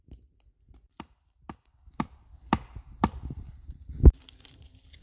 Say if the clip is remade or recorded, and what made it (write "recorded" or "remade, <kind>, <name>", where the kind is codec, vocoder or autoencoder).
remade, vocoder, BigVGAN v2